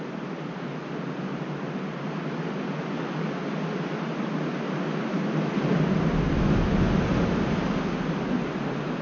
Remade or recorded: recorded